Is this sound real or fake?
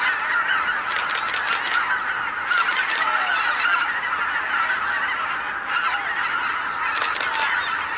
real